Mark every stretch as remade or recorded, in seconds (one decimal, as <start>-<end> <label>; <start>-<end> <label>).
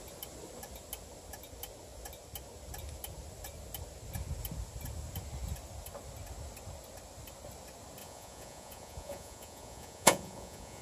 0.0-8.0 recorded; 8.0-10.8 remade